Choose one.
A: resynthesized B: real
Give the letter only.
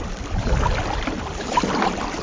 B